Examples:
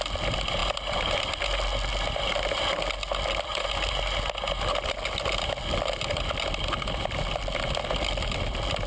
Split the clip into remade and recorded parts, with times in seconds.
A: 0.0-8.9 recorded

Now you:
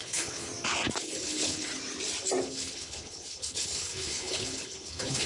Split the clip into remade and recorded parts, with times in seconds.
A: 0.0-0.5 remade; 0.5-1.0 recorded; 1.0-1.7 remade; 1.7-2.4 recorded; 2.4-5.3 remade

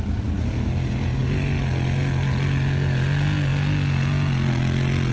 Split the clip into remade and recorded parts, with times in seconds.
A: 0.0-5.1 recorded